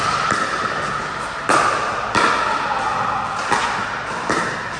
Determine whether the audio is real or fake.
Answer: real